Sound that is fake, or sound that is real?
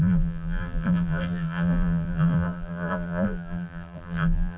fake